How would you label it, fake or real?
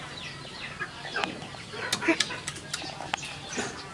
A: real